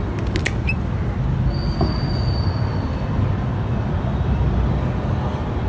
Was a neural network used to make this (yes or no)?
no